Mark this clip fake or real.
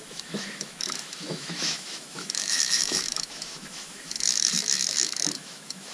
fake